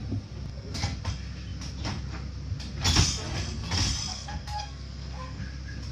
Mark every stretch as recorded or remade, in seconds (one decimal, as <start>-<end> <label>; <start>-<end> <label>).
0.0-0.5 recorded; 0.5-1.0 remade; 1.0-4.1 recorded; 4.1-5.4 remade; 5.4-5.9 recorded